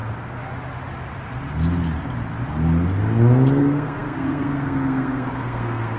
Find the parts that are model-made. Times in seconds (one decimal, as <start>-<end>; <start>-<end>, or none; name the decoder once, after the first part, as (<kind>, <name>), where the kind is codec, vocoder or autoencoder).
3.6-6.0 (codec, SNAC)